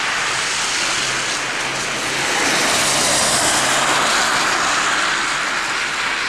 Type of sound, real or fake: real